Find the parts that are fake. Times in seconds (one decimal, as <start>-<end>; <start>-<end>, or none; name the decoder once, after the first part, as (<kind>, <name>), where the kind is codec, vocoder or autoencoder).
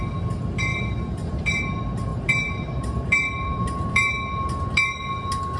0.7-1.6 (vocoder, BigVGAN v2); 2.1-4.5